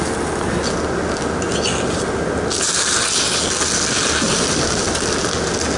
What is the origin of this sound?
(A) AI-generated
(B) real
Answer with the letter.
B